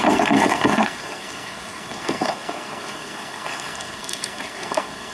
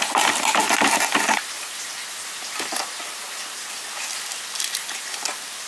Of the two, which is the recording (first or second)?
second